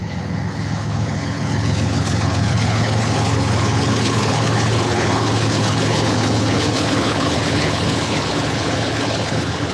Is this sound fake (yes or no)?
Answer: yes